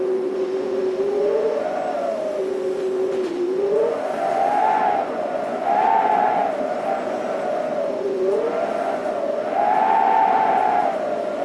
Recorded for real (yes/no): no